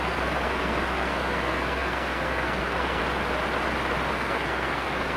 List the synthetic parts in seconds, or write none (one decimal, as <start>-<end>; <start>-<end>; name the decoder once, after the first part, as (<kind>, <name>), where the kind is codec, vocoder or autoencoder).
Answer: 0.0-3.0 (codec, SNAC); 4.1-5.2